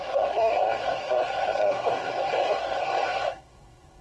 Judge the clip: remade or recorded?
remade